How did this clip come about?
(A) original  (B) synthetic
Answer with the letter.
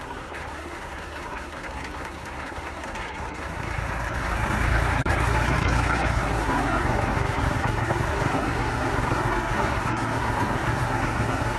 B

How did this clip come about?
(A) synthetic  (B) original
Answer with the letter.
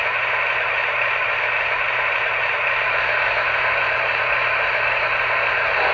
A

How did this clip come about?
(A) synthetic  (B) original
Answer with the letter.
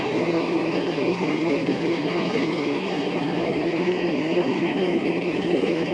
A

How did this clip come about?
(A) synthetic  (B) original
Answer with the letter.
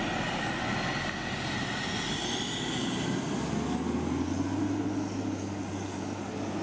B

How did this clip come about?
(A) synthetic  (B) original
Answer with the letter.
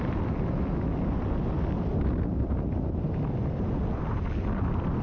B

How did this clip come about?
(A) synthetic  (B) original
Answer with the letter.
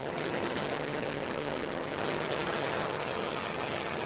A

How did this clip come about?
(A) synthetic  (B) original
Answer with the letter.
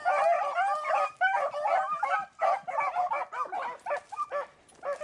B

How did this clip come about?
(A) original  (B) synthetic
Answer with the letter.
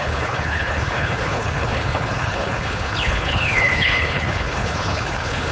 B